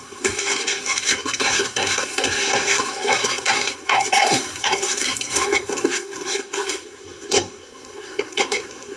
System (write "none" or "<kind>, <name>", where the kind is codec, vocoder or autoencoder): codec, SNAC